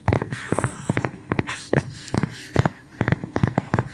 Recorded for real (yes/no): no